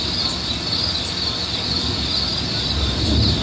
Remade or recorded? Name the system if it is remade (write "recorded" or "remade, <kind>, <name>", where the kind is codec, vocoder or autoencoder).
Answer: recorded